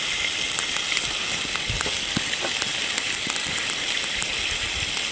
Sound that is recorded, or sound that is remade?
recorded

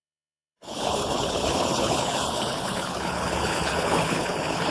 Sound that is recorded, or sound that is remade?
remade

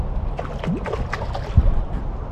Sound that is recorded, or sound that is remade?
recorded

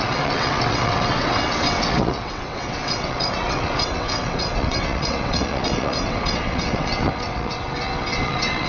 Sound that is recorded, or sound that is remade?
remade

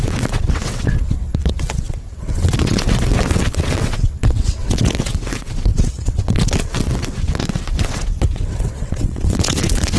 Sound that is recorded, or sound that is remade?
remade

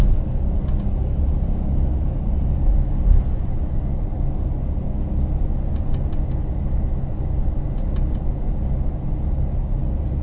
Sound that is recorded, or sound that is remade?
recorded